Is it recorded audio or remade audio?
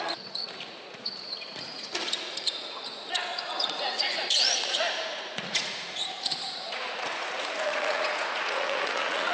remade